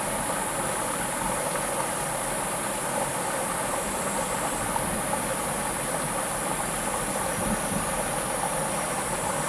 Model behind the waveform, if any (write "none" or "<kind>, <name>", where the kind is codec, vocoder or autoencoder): none